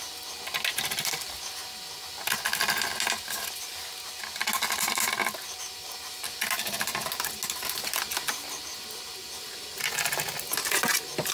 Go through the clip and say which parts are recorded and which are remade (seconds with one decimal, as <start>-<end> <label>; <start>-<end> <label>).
0.0-11.3 recorded